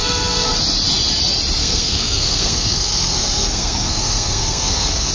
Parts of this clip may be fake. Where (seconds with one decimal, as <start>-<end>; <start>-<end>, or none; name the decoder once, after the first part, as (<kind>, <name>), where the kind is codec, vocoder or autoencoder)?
0.0-0.5 (codec, SNAC); 1.6-5.1